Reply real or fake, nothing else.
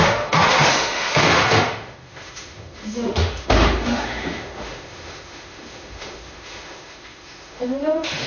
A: fake